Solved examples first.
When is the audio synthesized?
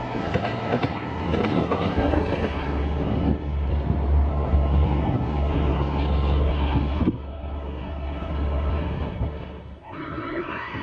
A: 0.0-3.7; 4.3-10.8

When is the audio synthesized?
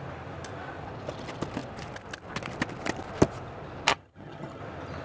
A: 3.9-4.6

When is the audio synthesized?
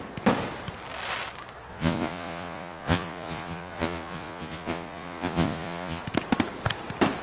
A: 1.7-6.0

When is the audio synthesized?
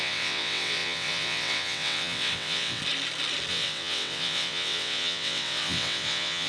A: 0.0-2.8; 3.5-6.5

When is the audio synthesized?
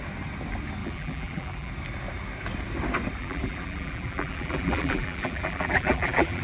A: 0.8-1.7; 3.2-6.4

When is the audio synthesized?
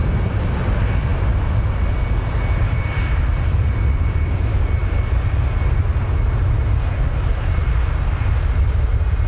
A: none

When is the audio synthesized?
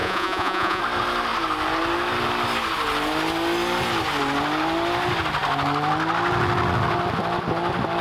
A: 0.0-0.8